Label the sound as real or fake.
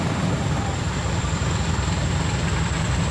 real